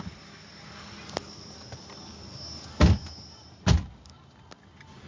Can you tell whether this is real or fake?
real